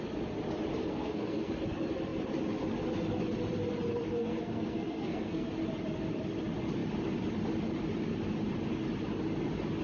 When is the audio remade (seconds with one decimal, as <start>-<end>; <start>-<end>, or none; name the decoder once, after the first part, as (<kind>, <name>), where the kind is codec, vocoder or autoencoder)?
0.8-1.5 (codec, SNAC); 4.2-5.5